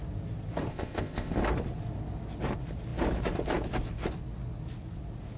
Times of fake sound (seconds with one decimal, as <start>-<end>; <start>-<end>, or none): 0.7-1.4